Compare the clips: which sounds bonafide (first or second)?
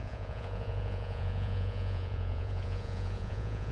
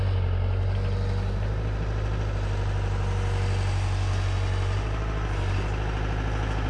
second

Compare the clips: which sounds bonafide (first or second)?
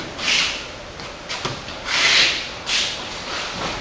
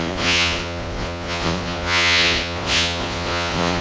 first